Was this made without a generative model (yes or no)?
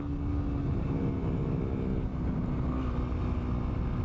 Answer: yes